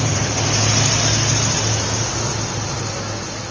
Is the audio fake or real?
real